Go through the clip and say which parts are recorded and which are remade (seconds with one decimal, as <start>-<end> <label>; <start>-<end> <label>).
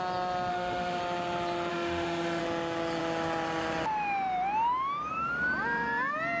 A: 0.0-0.5 recorded; 0.5-1.0 remade; 1.0-1.7 recorded; 1.7-2.4 remade; 2.4-6.4 recorded